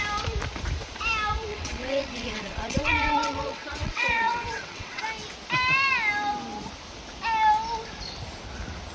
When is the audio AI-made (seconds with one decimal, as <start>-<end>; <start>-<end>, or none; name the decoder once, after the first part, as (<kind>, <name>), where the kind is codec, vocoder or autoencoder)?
1.5-5.0 (vocoder, WaveNeXt)